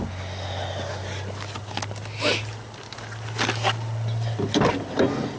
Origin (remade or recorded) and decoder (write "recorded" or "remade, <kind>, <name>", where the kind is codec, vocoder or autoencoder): recorded